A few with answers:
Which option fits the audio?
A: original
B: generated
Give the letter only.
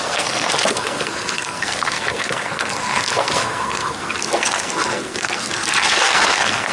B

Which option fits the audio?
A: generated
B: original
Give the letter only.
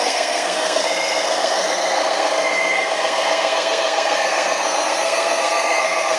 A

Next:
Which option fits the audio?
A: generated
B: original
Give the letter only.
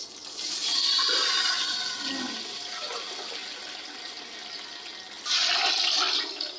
B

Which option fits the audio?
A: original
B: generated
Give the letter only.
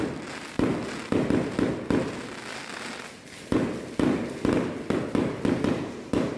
A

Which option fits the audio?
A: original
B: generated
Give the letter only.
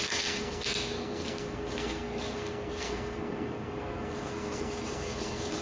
B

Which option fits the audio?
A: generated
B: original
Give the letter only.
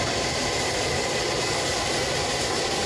B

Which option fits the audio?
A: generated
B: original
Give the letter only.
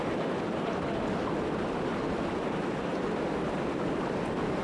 B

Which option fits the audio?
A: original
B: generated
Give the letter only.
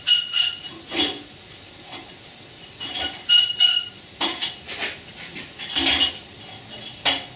A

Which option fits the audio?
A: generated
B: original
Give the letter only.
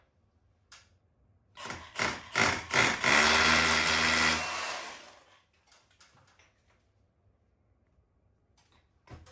B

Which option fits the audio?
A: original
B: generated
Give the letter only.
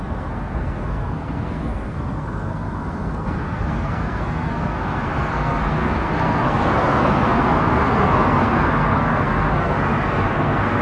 B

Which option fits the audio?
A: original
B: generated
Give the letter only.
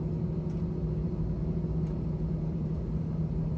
A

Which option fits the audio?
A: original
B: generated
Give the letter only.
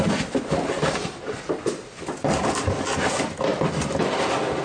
A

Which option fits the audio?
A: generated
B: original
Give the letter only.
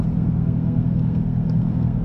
A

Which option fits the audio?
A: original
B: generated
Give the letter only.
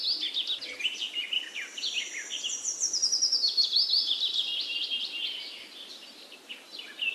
A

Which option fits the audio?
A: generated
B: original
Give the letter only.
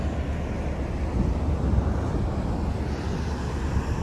B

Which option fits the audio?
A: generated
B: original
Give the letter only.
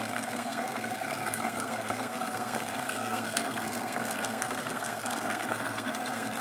A